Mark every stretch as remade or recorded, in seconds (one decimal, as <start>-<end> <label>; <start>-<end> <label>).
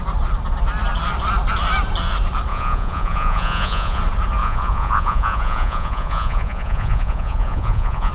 0.0-2.5 recorded; 2.5-4.0 remade; 4.0-4.4 recorded; 4.4-8.1 remade